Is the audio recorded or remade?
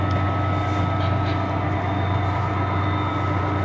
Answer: recorded